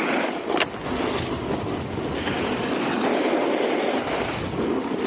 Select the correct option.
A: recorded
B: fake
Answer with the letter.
A